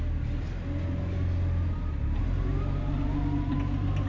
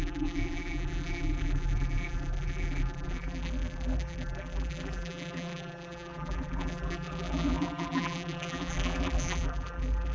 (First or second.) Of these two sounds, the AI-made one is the second